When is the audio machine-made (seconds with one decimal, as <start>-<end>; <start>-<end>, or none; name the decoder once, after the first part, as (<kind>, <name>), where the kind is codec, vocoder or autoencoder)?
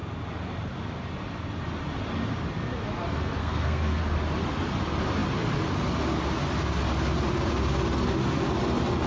3.4-4.0 (codec, SNAC)